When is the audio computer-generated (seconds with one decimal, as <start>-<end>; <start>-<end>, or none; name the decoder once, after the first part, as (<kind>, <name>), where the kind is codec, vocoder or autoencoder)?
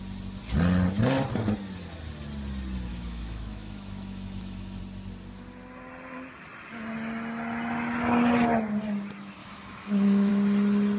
2.9-4.8 (autoencoder, DAC-VAE); 9.4-10.3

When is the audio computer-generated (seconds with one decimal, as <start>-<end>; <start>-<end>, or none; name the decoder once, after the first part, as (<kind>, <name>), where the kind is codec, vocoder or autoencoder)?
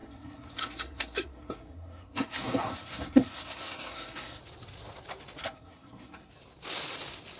0.0-4.4 (codec, SNAC); 5.4-6.3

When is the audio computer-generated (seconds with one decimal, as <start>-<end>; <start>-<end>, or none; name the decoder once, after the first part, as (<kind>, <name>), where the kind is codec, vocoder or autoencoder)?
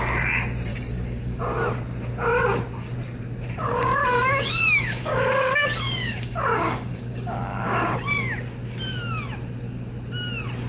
0.7-1.4 (codec, DAC); 3.6-8.1